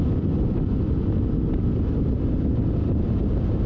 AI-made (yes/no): no